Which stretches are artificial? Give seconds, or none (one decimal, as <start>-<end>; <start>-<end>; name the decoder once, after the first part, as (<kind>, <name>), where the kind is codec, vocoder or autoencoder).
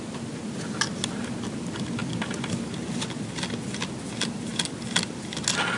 none